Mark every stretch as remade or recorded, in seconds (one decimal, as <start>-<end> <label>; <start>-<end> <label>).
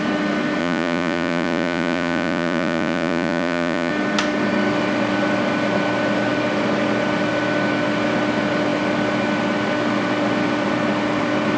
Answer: 0.0-0.6 recorded; 0.6-3.9 remade; 3.9-11.6 recorded